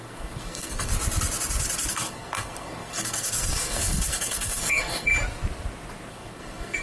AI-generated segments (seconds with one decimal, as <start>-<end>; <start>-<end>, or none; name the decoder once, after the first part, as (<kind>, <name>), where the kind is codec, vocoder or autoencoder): 0.0-0.9 (codec, SNAC); 1.9-5.1; 6.1-6.8